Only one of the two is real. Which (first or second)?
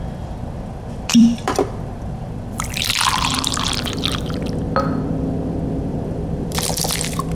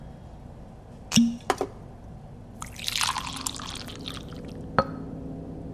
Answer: second